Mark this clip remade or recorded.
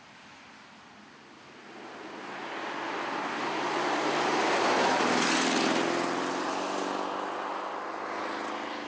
recorded